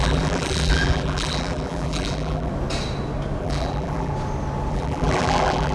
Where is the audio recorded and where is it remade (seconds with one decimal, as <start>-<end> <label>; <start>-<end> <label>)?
0.0-2.5 remade; 2.5-3.4 recorded; 3.4-4.1 remade; 4.1-4.7 recorded; 4.7-5.7 remade